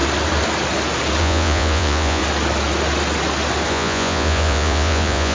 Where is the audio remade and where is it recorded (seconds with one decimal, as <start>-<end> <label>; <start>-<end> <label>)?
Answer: 0.0-1.2 recorded; 1.2-2.2 remade; 2.2-3.7 recorded; 3.7-5.3 remade